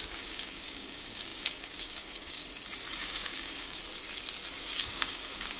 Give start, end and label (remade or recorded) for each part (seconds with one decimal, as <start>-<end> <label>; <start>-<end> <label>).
0.0-2.4 remade; 2.4-3.0 recorded; 3.0-3.8 remade; 3.8-4.6 recorded; 4.6-5.6 remade